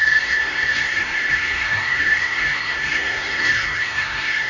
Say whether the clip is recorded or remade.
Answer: remade